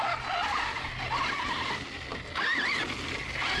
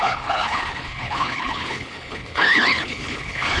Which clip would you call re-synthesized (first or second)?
second